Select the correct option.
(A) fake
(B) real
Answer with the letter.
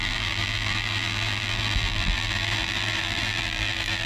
A